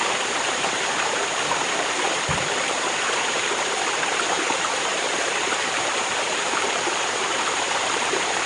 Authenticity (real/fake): fake